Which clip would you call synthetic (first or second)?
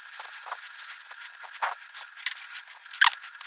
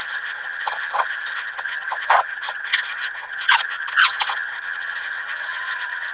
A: second